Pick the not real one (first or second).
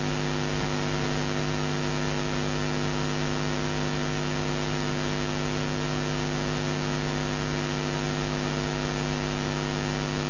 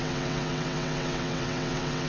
second